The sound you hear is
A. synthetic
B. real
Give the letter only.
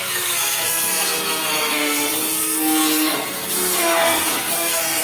A